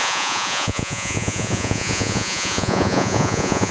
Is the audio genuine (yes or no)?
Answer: no